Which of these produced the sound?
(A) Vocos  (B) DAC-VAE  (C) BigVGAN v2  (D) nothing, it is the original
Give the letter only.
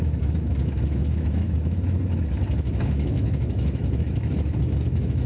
B